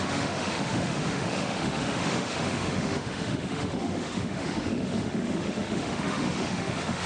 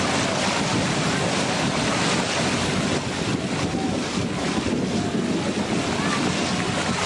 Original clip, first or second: second